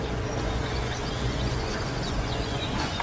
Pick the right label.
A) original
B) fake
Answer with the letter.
B